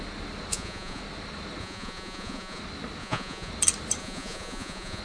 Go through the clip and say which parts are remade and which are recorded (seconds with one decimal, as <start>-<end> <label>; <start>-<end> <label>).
0.0-0.5 recorded; 0.5-1.0 remade; 1.0-1.6 recorded; 1.6-2.6 remade; 2.6-3.0 recorded; 3.0-3.5 remade; 3.5-4.0 recorded; 4.0-5.0 remade

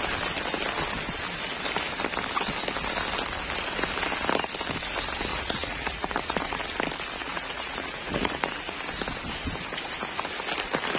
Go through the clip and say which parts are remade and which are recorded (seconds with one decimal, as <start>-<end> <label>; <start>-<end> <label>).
0.0-5.3 recorded; 5.3-6.6 remade; 6.6-7.2 recorded; 7.2-8.8 remade; 8.8-11.0 recorded

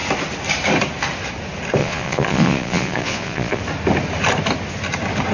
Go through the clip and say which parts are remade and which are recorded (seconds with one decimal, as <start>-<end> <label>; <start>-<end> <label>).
0.0-1.8 recorded; 1.8-3.6 remade; 3.6-5.3 recorded

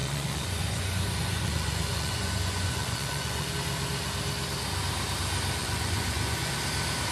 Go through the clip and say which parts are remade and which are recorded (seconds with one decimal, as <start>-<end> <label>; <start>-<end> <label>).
0.0-3.5 remade; 3.5-5.6 recorded; 5.6-6.5 remade; 6.5-7.1 recorded

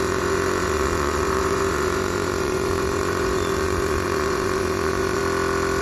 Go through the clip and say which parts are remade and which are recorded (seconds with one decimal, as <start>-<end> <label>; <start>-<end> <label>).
0.0-5.2 remade; 5.2-5.8 recorded

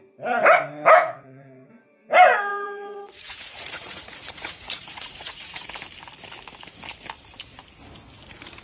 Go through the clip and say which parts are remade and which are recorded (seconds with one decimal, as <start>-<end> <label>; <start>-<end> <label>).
0.0-1.0 recorded; 1.0-1.7 remade; 1.7-2.5 recorded; 2.5-5.7 remade; 5.7-8.6 recorded

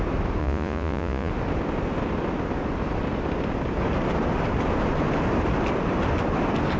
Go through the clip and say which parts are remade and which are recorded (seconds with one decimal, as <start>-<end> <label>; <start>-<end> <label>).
0.0-0.4 recorded; 0.4-1.3 remade; 1.3-6.8 recorded

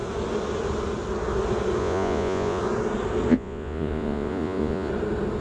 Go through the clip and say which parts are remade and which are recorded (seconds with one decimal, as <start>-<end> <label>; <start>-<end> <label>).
0.0-1.8 recorded; 1.8-2.6 remade; 2.6-3.3 recorded; 3.3-4.9 remade; 4.9-5.4 recorded